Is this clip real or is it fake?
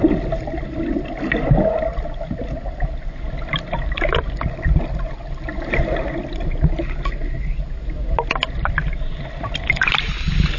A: real